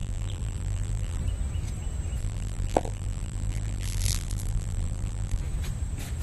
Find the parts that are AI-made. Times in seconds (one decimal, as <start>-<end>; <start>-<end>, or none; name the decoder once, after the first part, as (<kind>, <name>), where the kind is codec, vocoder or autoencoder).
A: 0.0-1.2 (vocoder, BigVGAN v2); 2.2-5.4